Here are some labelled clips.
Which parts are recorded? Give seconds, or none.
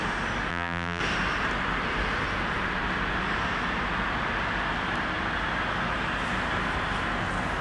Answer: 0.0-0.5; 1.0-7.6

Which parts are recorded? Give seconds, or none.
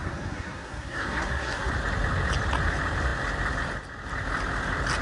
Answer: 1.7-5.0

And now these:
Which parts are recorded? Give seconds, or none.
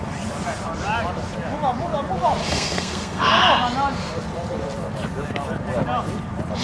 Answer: 0.0-2.4; 3.3-6.6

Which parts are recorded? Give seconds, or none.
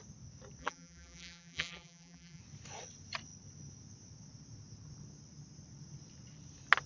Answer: 0.0-0.6; 2.4-6.9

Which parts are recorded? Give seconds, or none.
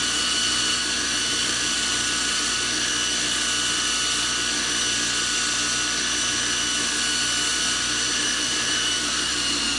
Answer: 2.9-7.5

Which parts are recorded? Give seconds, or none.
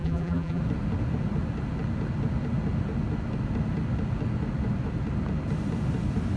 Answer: 0.6-6.4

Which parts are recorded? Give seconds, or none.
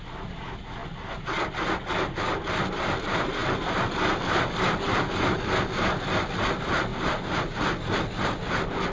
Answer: 0.0-8.9